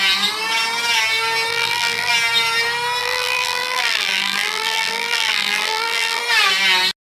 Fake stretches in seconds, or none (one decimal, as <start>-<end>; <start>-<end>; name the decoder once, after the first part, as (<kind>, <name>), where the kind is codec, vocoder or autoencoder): 1.5-2.1 (vocoder, BigVGAN v2); 3.0-6.2